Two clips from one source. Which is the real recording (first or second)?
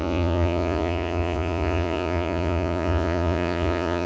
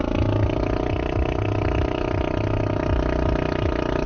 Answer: second